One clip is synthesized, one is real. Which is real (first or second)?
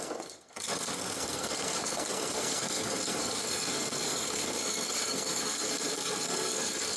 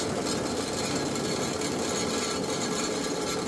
second